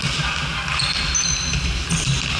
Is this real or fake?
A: real